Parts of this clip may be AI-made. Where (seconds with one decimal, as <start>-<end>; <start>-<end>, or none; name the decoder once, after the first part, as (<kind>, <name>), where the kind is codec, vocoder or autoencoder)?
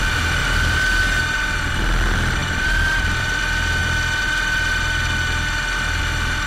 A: 0.4-1.0 (vocoder, BigVGAN v2); 2.4-3.4